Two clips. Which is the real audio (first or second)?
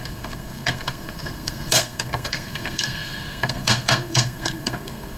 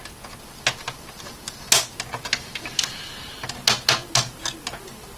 second